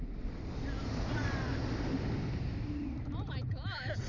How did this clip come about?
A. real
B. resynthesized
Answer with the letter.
A